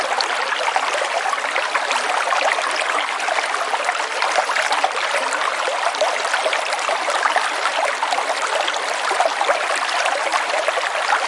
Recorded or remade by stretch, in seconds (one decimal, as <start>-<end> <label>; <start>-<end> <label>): 0.0-11.3 recorded

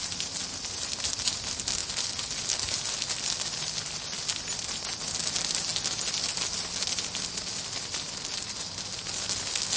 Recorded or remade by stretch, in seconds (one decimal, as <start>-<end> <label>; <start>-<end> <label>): 0.0-9.8 recorded

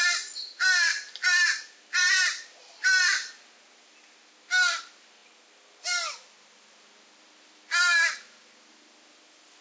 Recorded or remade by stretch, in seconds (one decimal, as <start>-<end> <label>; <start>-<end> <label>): 0.0-9.6 recorded

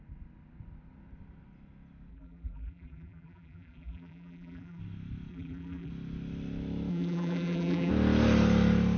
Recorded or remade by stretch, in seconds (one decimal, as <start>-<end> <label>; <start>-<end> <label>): 0.0-2.1 recorded; 2.1-4.8 remade; 4.8-5.3 recorded; 5.3-5.9 remade; 5.9-6.9 recorded; 6.9-7.9 remade; 7.9-9.0 recorded

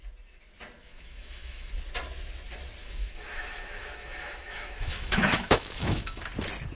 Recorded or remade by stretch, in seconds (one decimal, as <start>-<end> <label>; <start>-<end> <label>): 0.0-0.8 recorded; 0.8-1.7 remade; 1.7-2.8 recorded; 2.8-6.2 remade; 6.2-6.7 recorded

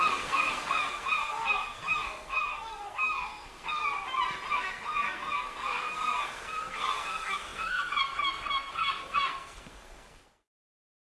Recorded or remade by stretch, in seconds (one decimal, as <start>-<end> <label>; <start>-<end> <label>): 0.0-3.8 remade; 3.8-4.5 recorded; 4.5-11.1 remade

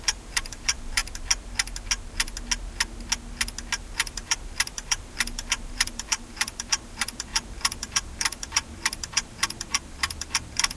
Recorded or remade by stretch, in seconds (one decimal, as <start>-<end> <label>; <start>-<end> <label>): 0.0-1.0 remade; 1.0-3.8 recorded; 3.8-10.8 remade